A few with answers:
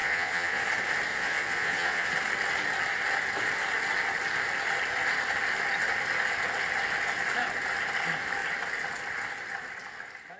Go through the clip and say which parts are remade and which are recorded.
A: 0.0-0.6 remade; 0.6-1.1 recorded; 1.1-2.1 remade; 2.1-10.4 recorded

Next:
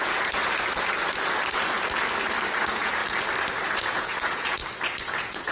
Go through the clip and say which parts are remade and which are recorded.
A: 0.0-0.4 remade; 0.4-2.6 recorded; 2.6-3.0 remade; 3.0-3.8 recorded; 3.8-4.6 remade; 4.6-5.1 recorded; 5.1-5.5 remade